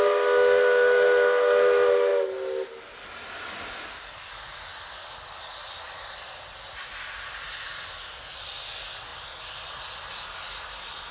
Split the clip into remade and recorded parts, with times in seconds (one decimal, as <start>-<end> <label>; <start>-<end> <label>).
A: 0.0-11.1 recorded